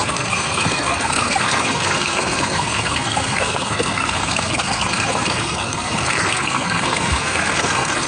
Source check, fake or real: fake